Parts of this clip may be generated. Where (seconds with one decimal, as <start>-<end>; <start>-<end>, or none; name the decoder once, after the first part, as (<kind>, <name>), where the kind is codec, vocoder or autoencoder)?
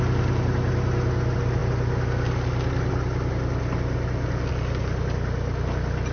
none